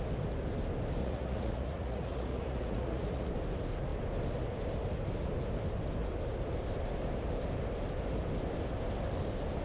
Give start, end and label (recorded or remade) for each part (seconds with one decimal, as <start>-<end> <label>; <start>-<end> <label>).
0.0-1.0 recorded; 1.0-3.3 remade; 3.3-9.6 recorded